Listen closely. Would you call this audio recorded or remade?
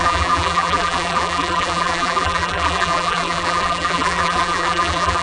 remade